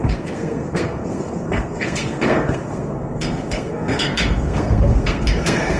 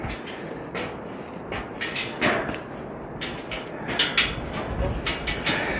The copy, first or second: first